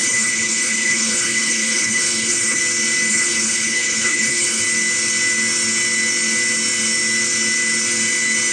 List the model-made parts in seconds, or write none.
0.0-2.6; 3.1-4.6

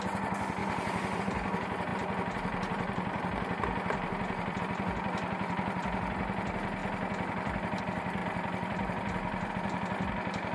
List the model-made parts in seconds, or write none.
0.6-1.2; 1.9-4.6; 8.2-9.5